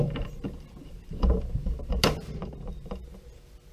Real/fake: real